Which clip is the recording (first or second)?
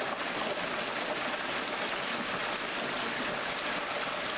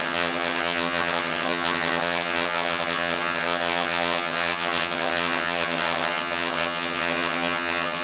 first